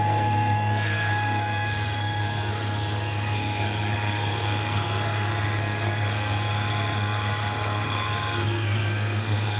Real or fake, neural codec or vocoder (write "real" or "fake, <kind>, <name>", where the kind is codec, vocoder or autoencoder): fake, codec, SNAC